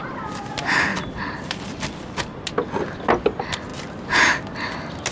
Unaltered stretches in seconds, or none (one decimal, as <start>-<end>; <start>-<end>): 0.0-0.9; 1.6-5.1